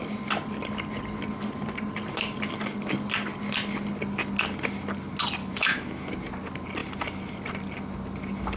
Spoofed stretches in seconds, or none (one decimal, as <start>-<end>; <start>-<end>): 5.4-6.2